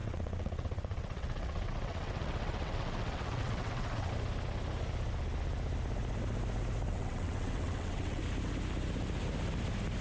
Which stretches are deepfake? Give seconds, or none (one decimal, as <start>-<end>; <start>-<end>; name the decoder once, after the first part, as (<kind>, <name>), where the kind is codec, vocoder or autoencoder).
0.0-4.1 (vocoder, WaveNeXt); 6.9-8.2